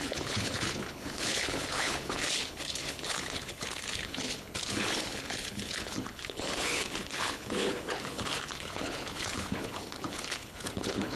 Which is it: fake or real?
fake